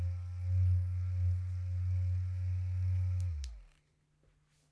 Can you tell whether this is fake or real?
real